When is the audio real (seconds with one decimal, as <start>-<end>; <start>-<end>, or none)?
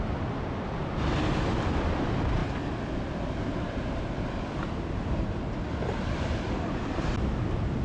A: 0.0-7.8